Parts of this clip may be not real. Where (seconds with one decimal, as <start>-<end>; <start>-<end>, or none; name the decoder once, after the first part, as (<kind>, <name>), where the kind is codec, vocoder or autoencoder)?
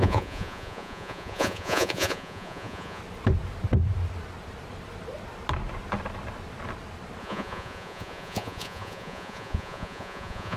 0.0-3.0 (vocoder, Vocos); 7.2-10.6